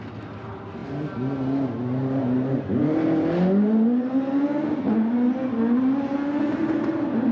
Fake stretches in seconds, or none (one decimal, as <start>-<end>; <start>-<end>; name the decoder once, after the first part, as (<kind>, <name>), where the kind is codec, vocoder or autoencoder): none